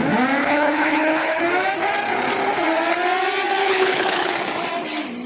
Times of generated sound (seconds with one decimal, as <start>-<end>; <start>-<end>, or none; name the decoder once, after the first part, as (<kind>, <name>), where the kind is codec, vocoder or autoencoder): 0.4-1.4 (codec, HILCodec); 3.6-4.3